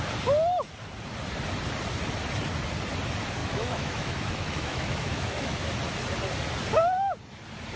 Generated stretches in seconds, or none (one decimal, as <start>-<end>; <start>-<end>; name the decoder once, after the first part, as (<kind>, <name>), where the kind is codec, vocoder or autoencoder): 3.4-5.8 (autoencoder, DAC-VAE)